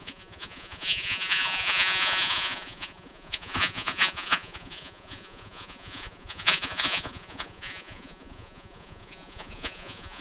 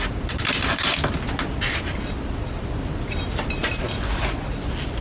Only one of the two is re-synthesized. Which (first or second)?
first